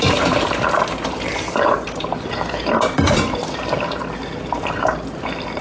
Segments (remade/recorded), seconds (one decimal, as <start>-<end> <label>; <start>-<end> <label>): 0.0-5.6 remade